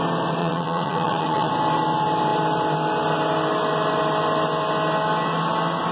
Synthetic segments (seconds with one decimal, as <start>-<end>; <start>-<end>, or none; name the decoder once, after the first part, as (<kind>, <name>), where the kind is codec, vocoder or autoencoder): 0.4-1.5 (vocoder, Vocos)